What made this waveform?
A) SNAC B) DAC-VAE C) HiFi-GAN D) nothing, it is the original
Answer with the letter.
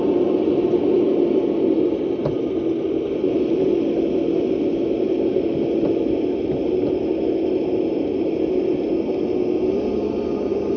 D